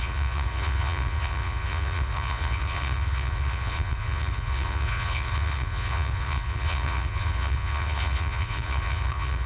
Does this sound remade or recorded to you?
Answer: remade